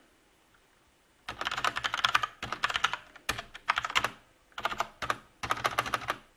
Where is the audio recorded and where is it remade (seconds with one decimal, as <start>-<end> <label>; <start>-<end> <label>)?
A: 0.0-6.4 recorded